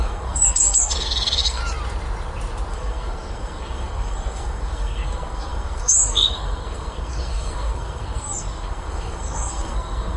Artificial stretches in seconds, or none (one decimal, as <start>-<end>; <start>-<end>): 0.0-1.6; 2.7-10.2